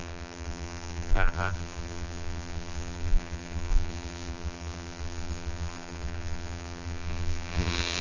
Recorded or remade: remade